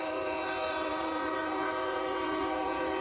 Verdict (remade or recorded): remade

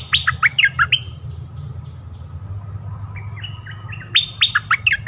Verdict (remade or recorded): recorded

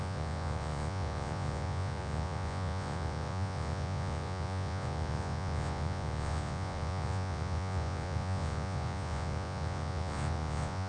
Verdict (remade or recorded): remade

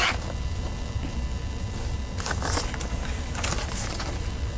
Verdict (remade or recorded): recorded